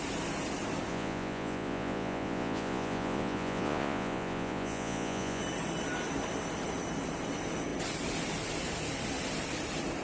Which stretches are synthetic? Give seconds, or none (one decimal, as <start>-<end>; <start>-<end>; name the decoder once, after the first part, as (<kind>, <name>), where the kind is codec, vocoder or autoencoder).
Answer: 0.9-5.4 (vocoder, Vocos)